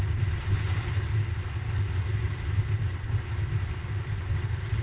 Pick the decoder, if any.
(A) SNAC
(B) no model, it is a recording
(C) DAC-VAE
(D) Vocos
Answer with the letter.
B